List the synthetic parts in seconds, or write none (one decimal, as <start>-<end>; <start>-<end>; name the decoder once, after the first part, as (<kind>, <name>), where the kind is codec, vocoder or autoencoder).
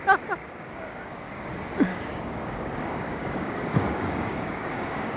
0.4-1.5 (codec, DAC); 1.9-5.2